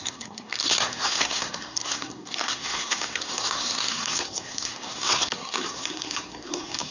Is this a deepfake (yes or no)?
yes